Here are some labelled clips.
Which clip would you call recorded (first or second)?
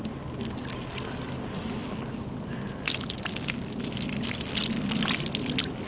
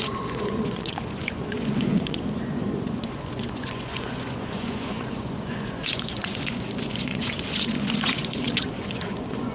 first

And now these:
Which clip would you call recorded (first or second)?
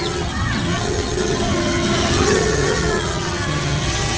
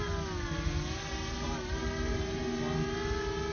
second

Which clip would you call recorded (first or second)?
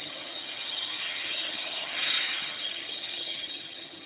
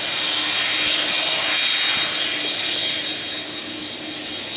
second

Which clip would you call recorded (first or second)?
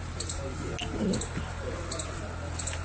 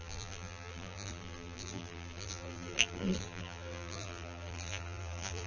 first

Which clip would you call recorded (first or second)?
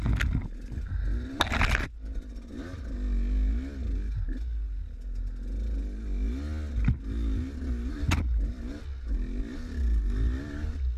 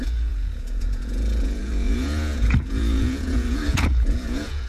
first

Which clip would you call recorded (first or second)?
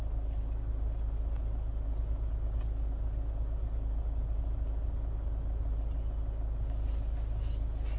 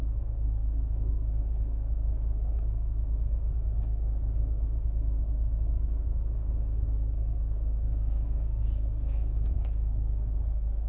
first